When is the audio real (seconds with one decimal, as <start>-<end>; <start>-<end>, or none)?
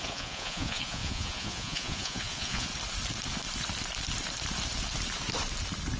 2.7-6.0